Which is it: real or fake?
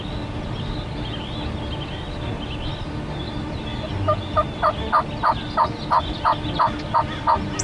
real